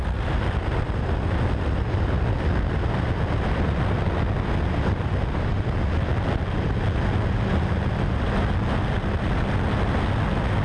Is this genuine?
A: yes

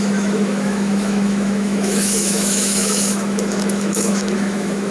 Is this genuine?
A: no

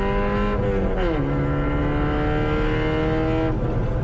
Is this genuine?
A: yes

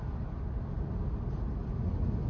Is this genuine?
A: yes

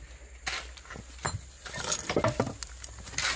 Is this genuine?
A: yes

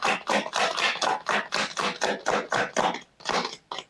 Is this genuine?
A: yes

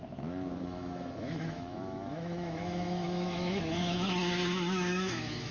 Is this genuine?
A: no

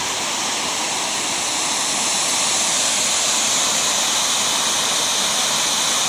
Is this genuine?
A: yes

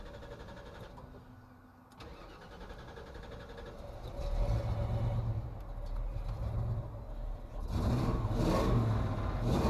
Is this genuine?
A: yes